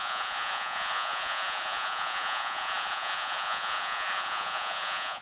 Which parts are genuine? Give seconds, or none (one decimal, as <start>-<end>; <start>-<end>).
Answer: none